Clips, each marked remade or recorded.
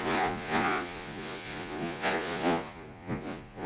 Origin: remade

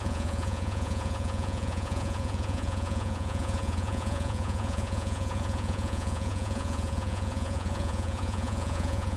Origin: remade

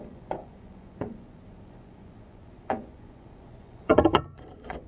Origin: remade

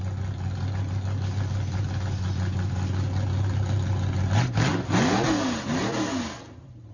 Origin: recorded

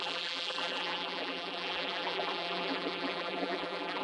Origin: remade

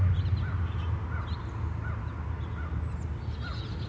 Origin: recorded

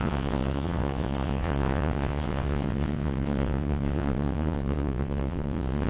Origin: remade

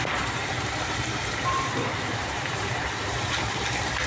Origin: remade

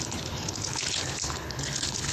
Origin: remade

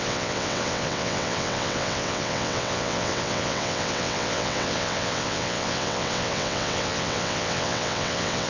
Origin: remade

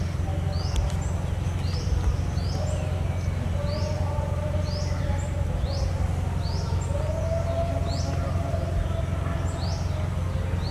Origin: recorded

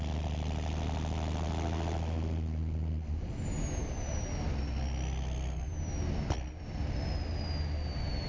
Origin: recorded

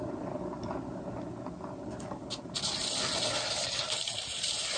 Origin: recorded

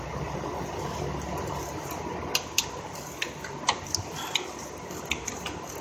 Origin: remade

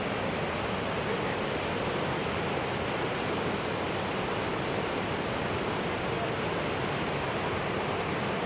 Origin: recorded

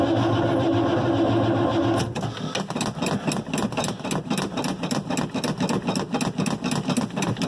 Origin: recorded